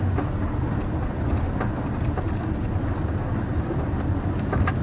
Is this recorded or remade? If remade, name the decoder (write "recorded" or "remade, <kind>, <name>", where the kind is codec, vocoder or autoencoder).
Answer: recorded